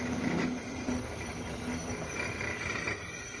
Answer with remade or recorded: recorded